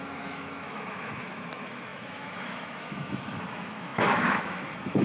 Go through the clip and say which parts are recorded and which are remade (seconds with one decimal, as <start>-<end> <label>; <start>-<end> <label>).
0.0-5.0 remade